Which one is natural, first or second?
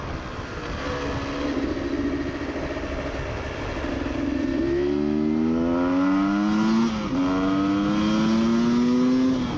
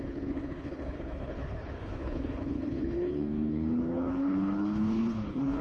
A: first